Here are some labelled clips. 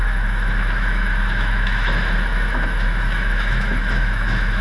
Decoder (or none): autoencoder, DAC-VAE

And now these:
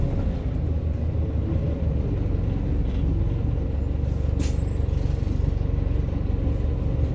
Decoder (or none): none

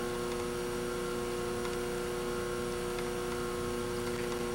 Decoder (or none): none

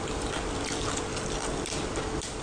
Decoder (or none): none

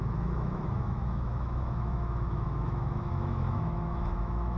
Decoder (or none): autoencoder, DAC-VAE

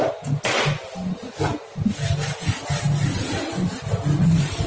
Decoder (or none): none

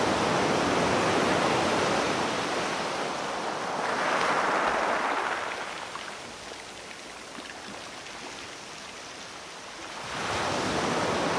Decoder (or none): none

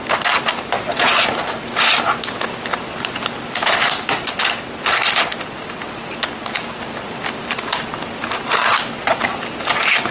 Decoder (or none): none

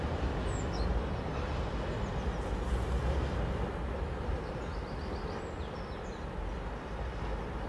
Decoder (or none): none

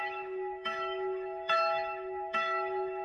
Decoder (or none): autoencoder, DAC-VAE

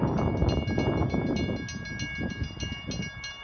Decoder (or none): none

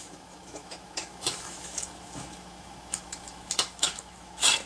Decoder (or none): autoencoder, DAC-VAE